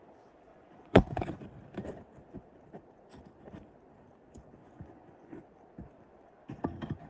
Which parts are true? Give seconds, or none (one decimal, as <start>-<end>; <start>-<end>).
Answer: 0.0-0.5; 1.4-4.6; 5.4-7.1